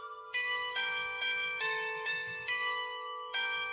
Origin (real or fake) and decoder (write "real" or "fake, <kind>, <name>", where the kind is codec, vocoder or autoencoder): fake, autoencoder, DAC-VAE